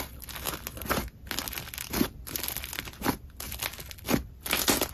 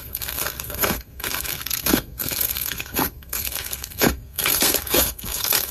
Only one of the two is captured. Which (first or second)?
first